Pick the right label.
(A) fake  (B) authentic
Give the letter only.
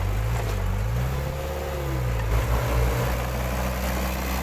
B